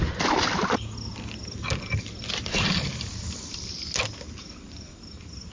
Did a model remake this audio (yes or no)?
no